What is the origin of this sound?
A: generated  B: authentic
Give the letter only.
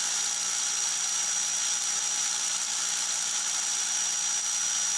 B